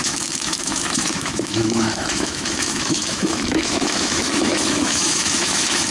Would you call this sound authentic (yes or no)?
no